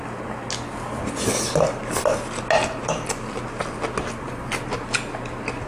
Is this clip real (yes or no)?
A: yes